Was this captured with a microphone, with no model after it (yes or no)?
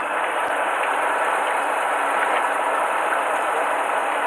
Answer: yes